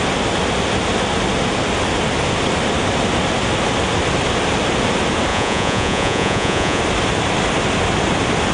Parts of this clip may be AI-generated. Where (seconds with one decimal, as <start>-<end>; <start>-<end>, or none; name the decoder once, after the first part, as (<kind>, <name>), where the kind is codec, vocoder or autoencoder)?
5.3-6.8 (vocoder, Vocos)